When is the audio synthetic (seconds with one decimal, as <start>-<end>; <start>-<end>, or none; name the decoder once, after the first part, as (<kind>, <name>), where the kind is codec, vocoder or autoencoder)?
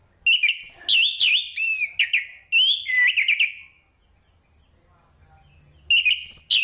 none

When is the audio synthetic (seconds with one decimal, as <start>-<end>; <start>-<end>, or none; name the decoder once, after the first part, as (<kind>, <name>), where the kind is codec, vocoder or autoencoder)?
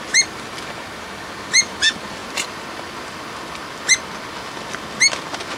none